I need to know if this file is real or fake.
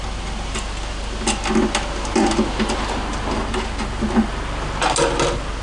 real